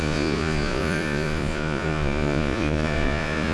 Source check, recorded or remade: remade